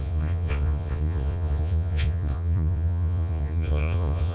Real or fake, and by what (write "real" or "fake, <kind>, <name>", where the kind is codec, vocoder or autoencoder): fake, vocoder, Vocos